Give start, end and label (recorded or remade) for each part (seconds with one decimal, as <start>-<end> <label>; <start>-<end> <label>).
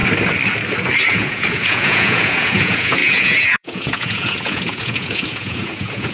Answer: 0.0-1.1 recorded; 1.1-6.1 remade